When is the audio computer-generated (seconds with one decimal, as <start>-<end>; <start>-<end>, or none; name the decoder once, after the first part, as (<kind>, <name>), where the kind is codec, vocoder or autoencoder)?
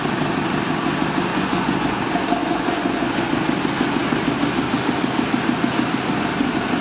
1.3-2.0 (vocoder, Vocos); 2.4-3.3